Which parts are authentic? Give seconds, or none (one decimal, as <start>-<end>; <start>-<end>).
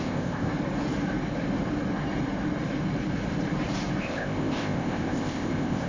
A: 0.5-4.0